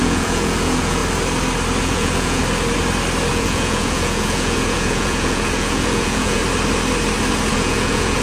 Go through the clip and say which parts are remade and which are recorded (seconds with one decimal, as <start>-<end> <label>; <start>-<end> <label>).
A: 0.0-1.0 remade; 1.0-1.8 recorded; 1.8-2.4 remade; 2.4-3.3 recorded; 3.3-6.4 remade; 6.4-7.5 recorded; 7.5-8.2 remade